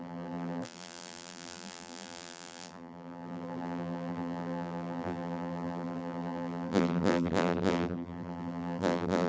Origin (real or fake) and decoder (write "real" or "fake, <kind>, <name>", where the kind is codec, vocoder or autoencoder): fake, vocoder, BigVGAN v2